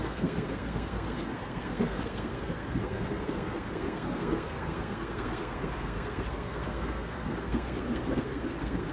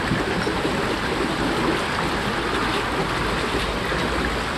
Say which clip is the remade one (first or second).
first